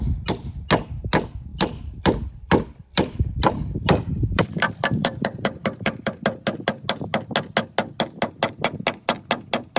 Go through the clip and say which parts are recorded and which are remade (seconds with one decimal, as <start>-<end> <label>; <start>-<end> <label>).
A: 0.0-1.5 recorded; 1.5-6.2 remade; 6.2-9.8 recorded